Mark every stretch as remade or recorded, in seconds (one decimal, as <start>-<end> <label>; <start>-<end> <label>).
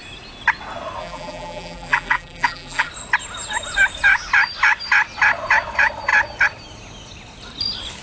0.0-1.0 recorded; 1.0-2.9 remade; 2.9-8.0 recorded